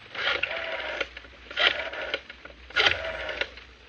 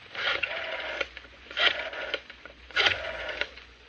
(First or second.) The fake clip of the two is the second